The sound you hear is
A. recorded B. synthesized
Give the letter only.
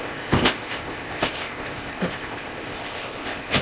B